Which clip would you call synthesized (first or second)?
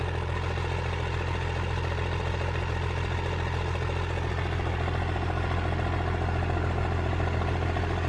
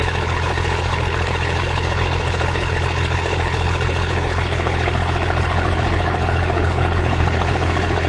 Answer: second